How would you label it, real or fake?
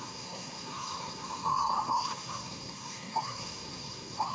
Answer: fake